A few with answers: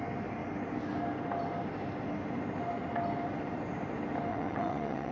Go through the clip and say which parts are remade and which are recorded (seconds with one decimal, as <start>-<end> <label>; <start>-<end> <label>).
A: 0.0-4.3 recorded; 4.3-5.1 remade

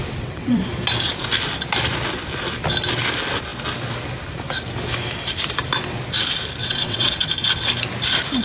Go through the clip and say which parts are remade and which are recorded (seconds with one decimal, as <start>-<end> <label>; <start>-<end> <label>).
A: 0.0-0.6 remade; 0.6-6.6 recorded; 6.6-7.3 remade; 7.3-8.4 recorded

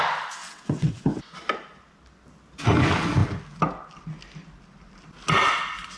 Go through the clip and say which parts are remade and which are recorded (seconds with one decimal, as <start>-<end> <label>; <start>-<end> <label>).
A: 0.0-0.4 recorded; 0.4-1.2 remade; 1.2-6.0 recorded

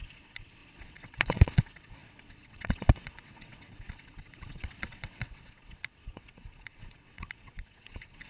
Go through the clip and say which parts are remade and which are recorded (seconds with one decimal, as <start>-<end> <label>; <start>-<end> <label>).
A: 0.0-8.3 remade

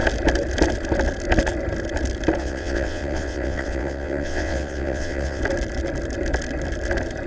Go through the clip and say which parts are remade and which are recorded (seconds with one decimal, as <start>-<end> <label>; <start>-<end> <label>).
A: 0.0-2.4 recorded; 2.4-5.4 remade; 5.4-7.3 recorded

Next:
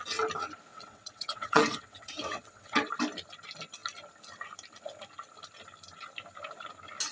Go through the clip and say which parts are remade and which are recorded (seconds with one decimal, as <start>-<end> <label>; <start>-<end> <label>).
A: 0.0-0.7 recorded; 0.7-2.9 remade; 2.9-7.1 recorded

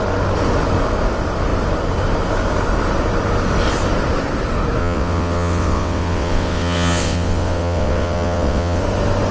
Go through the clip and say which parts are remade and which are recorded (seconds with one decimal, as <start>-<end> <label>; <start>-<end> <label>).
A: 0.0-4.8 recorded; 4.8-8.8 remade; 8.8-9.3 recorded